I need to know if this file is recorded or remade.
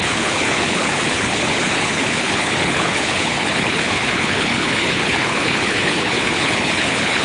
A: remade